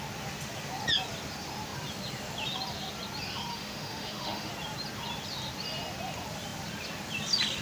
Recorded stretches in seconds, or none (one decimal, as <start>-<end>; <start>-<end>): 0.0-3.5; 4.5-7.6